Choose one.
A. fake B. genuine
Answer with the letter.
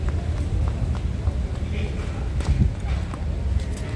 B